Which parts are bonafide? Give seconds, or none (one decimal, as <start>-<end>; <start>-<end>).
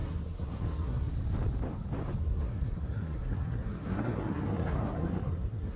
1.1-2.2